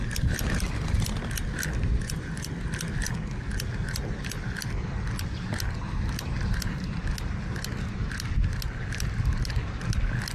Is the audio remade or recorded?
recorded